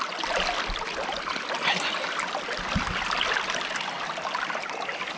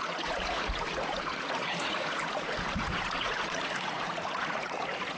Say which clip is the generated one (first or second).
second